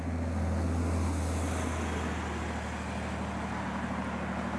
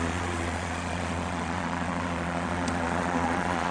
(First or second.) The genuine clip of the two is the first